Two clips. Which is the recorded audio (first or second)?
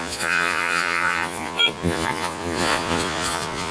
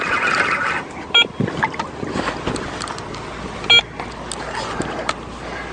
second